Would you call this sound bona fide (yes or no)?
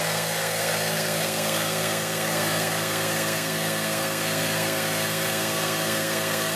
no